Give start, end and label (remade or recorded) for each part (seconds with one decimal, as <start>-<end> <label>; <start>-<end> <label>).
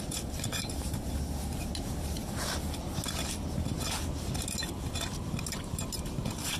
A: 0.0-2.2 remade; 2.2-5.4 recorded; 5.4-6.6 remade